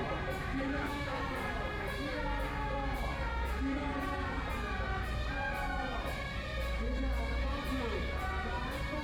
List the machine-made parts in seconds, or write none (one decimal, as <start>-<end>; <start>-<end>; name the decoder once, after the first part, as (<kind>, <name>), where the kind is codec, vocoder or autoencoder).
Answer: 0.4-1.2 (autoencoder, DAC-VAE)